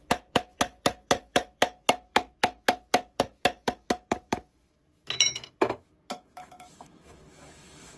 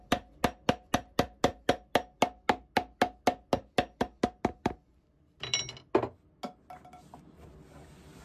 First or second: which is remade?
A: first